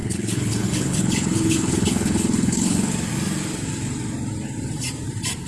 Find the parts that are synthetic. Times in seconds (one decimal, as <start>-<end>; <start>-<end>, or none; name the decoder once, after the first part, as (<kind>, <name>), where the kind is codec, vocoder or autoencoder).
0.0-2.9 (codec, HILCodec)